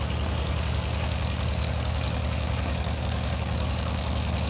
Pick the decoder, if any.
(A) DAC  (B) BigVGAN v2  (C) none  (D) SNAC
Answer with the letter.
A